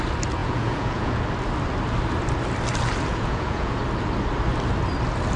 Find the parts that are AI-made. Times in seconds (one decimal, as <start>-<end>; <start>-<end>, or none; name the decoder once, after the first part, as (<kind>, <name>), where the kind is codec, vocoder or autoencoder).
0.4-1.2 (vocoder, Vocos); 3.1-3.8